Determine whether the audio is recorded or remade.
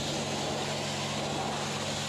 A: recorded